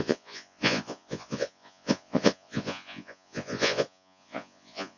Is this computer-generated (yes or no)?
yes